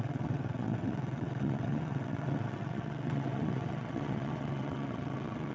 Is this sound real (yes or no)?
no